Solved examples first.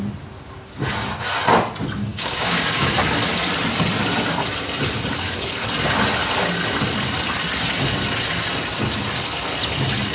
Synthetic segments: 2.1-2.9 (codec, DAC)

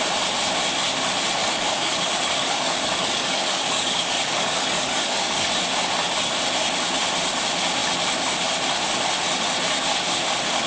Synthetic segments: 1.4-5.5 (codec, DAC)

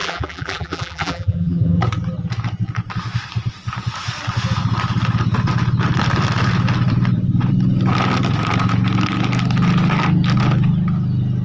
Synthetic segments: 0.0-1.8 (vocoder, BigVGAN v2)